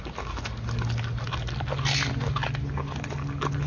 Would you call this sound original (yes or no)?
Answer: yes